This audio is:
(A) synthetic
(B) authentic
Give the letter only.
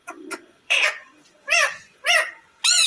A